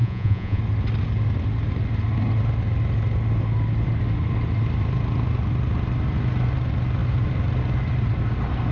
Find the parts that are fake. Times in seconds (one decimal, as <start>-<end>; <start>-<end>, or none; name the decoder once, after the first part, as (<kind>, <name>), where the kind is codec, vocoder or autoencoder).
0.0-0.6 (vocoder, Vocos)